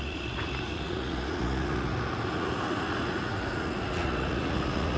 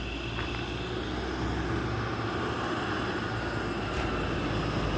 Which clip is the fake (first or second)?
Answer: first